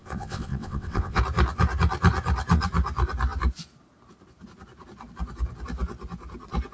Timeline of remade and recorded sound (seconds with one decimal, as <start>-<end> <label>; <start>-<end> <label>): 0.0-1.2 remade; 1.2-6.7 recorded